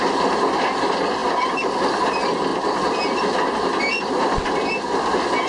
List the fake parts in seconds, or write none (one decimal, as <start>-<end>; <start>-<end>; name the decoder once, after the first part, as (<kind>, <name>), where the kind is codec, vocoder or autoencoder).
none

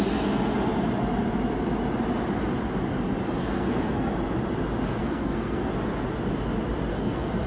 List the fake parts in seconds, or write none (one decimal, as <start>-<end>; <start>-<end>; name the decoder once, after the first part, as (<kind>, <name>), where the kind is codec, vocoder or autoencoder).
3.4-4.1 (codec, SNAC); 5.0-5.7; 6.9-7.5

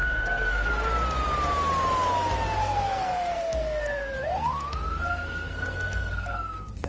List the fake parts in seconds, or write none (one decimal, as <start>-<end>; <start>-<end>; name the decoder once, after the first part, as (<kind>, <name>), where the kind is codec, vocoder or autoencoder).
0.0-0.7 (codec, SNAC); 2.6-6.9

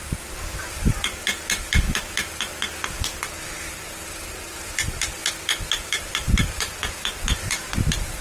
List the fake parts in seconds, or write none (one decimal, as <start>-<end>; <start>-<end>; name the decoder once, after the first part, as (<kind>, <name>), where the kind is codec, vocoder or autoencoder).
0.0-0.9 (vocoder, BigVGAN v2); 3.3-5.2; 5.8-8.2